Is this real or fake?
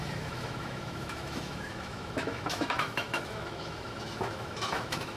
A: fake